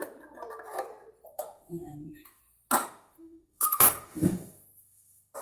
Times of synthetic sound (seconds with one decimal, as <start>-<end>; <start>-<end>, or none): 1.3-2.4; 2.8-5.4